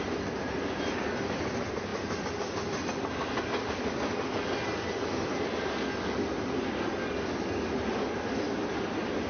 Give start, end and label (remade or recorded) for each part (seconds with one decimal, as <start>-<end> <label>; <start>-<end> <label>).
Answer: 0.0-9.3 recorded